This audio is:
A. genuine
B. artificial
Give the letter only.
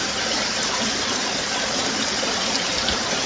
A